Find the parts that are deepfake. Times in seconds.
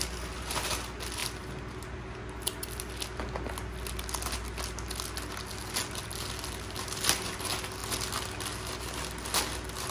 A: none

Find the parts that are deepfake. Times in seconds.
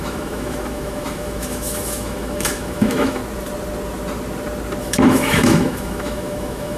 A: 0.0-3.2 (autoencoder, DAC-VAE); 4.8-6.8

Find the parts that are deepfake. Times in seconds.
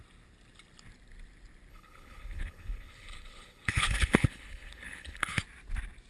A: 1.7-5.4 (codec, HILCodec)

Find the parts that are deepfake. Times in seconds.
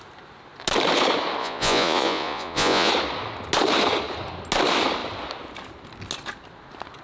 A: 1.4-2.9 (vocoder, Vocos)